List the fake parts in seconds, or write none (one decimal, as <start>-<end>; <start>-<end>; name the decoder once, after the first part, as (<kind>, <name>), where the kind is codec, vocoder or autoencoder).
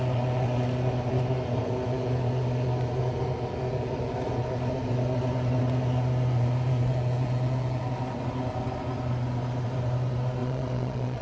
10.4-11.2 (vocoder, Vocos)